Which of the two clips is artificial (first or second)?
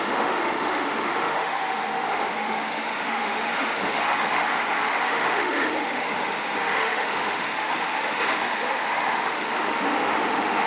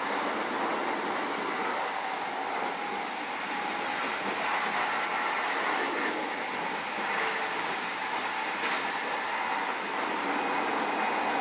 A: first